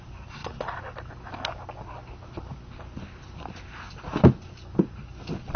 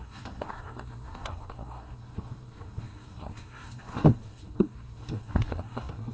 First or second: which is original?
first